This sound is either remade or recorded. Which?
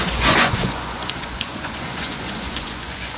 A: remade